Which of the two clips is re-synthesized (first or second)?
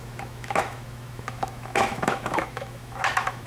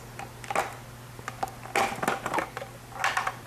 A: first